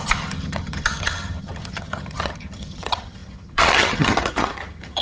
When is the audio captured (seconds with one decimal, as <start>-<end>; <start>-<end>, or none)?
none